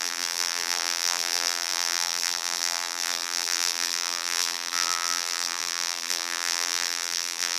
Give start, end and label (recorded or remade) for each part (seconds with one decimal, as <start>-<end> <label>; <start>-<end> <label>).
0.0-7.6 remade